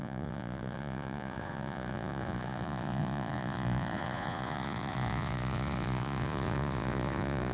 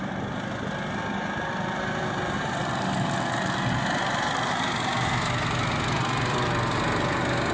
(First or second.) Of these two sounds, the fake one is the first